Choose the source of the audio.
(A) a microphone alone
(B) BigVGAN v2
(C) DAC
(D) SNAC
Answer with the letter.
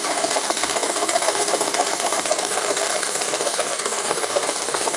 C